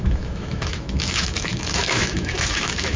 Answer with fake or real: fake